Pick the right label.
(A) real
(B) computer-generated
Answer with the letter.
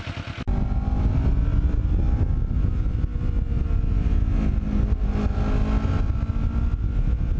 A